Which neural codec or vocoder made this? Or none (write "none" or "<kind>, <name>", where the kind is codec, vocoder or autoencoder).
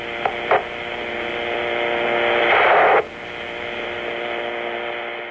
none